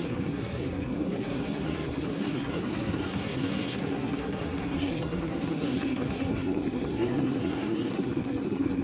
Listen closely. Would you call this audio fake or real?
fake